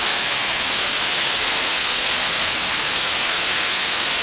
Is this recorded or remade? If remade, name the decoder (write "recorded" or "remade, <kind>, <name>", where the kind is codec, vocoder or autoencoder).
remade, codec, SNAC